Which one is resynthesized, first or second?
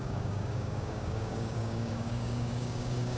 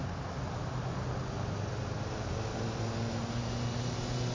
first